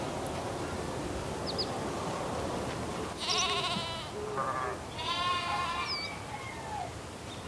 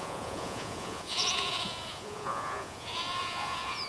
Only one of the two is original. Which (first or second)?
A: first